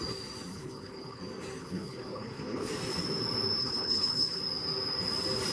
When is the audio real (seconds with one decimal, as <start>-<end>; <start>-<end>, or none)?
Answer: 0.0-0.5; 1.2-1.6; 2.7-3.6; 4.4-5.5